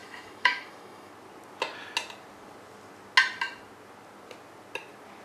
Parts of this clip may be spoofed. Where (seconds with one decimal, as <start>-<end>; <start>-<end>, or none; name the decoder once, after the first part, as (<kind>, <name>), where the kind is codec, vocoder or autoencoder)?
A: 0.0-1.1 (autoencoder, DAC-VAE)